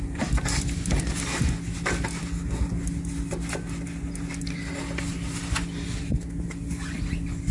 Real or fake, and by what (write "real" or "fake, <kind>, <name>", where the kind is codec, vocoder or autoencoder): real